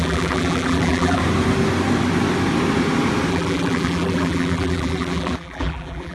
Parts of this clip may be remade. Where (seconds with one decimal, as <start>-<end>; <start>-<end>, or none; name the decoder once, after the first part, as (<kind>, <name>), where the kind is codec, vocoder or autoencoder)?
0.0-1.2 (vocoder, BigVGAN v2); 3.3-6.1